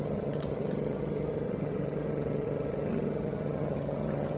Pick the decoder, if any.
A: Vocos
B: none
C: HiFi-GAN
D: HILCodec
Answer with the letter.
C